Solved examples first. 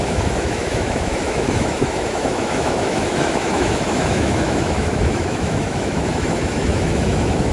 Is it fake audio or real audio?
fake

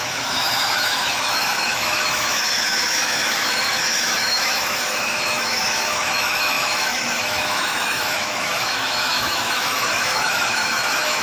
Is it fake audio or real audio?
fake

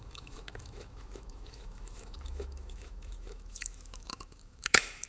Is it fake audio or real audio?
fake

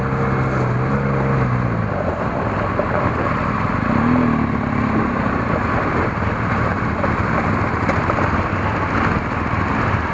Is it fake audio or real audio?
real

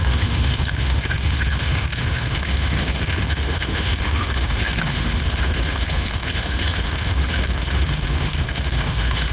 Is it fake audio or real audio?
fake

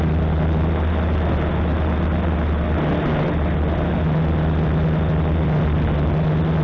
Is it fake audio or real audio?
real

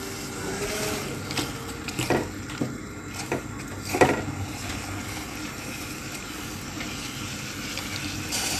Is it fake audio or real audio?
real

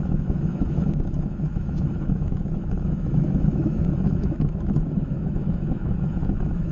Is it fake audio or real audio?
fake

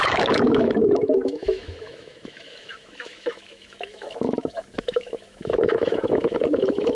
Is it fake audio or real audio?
fake